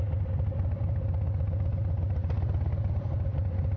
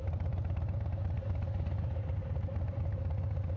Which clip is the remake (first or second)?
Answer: second